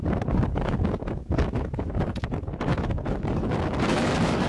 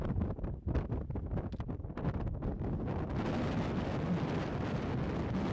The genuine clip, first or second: second